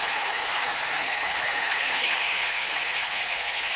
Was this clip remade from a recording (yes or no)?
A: yes